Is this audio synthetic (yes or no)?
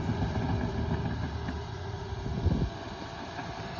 no